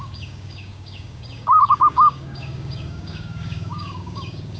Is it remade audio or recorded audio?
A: remade